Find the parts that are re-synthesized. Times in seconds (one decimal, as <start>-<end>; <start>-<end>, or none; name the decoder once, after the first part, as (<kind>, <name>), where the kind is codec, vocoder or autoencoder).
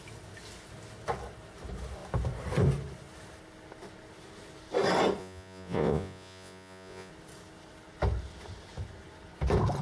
5.2-7.1 (vocoder, Vocos)